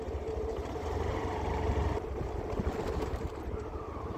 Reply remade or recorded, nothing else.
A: remade